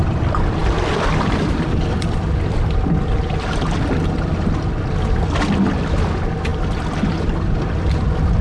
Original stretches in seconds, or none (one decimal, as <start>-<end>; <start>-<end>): 0.0-8.4